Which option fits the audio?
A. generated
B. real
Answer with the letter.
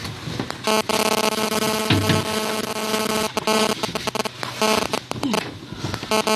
B